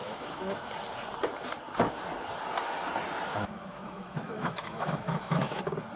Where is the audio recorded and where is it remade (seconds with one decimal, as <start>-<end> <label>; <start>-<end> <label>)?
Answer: 0.0-0.7 remade; 0.7-3.3 recorded; 3.3-5.6 remade; 5.6-6.0 recorded